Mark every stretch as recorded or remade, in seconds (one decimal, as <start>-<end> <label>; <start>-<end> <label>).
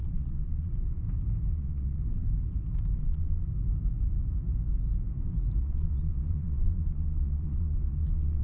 0.0-0.7 remade; 0.7-1.5 recorded; 1.5-2.0 remade; 2.0-3.0 recorded; 3.0-3.5 remade; 3.5-5.6 recorded; 5.6-8.4 remade